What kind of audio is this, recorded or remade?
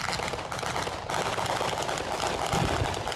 recorded